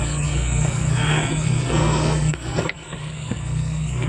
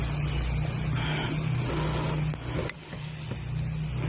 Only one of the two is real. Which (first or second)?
second